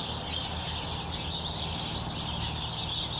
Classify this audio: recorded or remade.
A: recorded